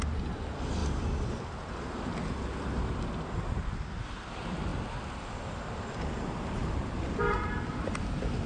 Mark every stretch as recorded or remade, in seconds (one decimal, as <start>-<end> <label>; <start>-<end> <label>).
0.0-0.8 remade; 0.8-4.0 recorded; 4.0-4.7 remade; 4.7-6.0 recorded; 6.0-8.5 remade